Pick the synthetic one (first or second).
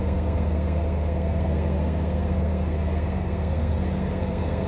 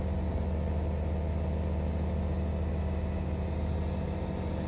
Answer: first